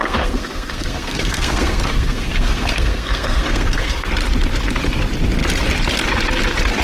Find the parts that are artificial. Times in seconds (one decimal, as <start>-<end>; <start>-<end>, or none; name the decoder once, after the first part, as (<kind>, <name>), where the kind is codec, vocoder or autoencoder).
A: 0.0-4.1 (codec, SNAC)